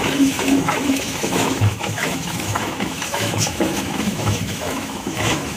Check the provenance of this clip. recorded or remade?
remade